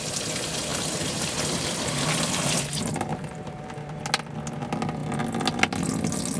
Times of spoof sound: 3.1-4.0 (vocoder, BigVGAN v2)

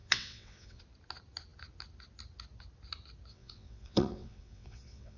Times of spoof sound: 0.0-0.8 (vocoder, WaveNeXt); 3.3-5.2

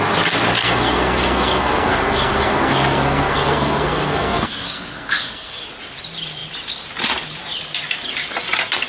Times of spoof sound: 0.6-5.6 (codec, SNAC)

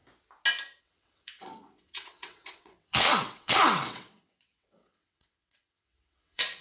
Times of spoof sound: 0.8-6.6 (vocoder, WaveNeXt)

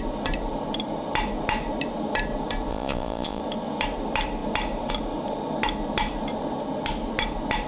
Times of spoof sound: 2.7-3.4 (vocoder, Vocos)